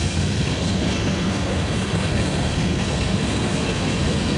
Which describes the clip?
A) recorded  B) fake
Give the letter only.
B